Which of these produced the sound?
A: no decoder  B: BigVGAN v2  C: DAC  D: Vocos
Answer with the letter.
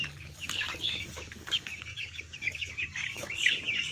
C